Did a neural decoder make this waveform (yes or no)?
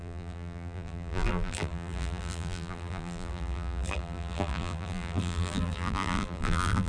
yes